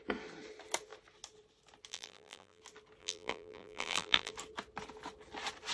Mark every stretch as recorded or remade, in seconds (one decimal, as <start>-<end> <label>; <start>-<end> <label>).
0.0-1.9 recorded; 1.9-2.6 remade; 2.6-3.0 recorded; 3.0-4.3 remade; 4.3-5.7 recorded